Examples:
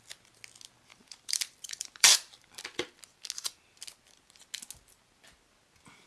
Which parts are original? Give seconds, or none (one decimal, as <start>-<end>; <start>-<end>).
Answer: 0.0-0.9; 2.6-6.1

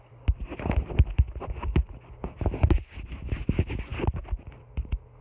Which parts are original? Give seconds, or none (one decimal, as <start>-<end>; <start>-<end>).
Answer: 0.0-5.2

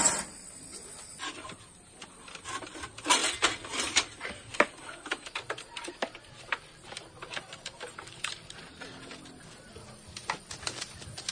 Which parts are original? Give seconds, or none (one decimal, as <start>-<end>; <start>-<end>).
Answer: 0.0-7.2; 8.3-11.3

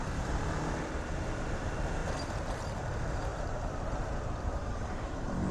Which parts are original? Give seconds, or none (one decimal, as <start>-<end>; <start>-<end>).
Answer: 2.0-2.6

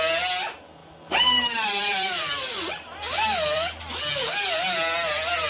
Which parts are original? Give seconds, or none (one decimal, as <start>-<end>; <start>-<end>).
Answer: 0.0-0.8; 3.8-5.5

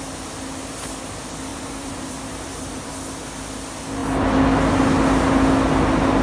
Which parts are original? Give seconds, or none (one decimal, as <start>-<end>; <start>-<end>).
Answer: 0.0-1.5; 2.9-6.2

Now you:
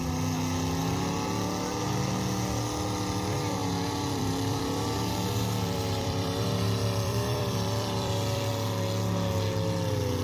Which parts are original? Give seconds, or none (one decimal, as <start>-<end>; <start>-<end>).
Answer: 0.0-3.6; 8.5-10.2